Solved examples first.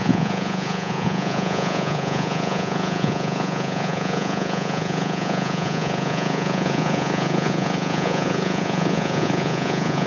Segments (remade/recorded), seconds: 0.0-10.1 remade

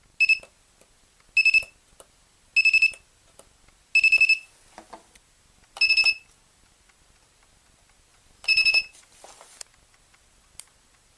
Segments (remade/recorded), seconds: 0.0-8.1 recorded; 8.1-9.0 remade; 9.0-11.2 recorded

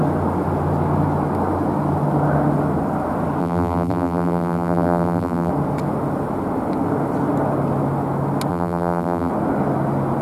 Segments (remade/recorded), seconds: 0.0-3.4 recorded; 3.4-5.5 remade; 5.5-8.5 recorded; 8.5-9.3 remade; 9.3-10.2 recorded

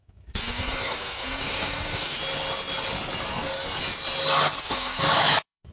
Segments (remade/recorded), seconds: 0.0-2.2 remade; 2.2-4.6 recorded; 4.6-5.7 remade